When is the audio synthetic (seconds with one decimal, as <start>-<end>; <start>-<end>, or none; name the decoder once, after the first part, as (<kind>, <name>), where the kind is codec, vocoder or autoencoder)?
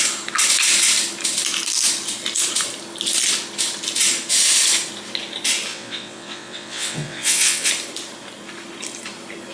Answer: 5.7-7.7 (vocoder, WaveNeXt)